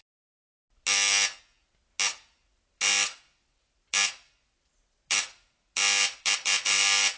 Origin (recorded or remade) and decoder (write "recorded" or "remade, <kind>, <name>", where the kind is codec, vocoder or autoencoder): recorded